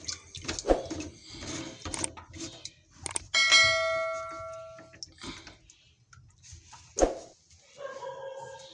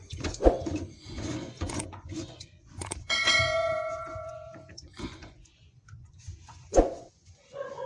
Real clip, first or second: first